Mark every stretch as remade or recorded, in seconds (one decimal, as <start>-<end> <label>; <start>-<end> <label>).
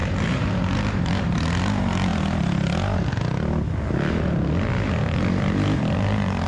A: 0.0-2.1 remade; 2.1-6.0 recorded; 6.0-6.5 remade